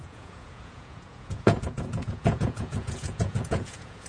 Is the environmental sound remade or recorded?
remade